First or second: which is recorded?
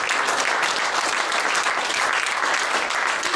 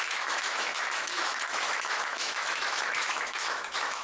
first